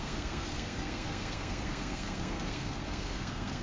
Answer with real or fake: fake